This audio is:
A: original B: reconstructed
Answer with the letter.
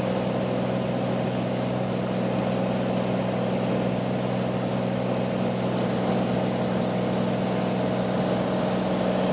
A